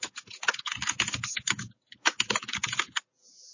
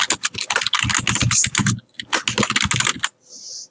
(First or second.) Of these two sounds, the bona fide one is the second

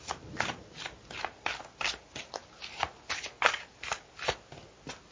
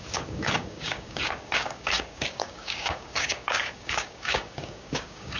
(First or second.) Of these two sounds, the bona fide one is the first